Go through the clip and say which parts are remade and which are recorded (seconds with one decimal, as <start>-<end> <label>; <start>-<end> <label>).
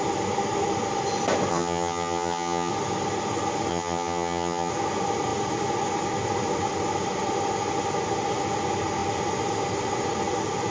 0.0-1.5 recorded; 1.5-2.7 remade; 2.7-3.7 recorded; 3.7-4.7 remade; 4.7-10.7 recorded